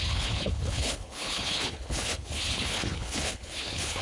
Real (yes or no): no